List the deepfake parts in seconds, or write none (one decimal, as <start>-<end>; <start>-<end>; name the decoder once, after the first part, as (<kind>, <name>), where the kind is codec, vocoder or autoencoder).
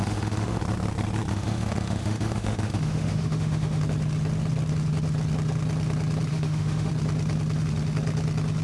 0.0-0.6 (autoencoder, DAC-VAE); 1.3-3.8; 6.3-6.9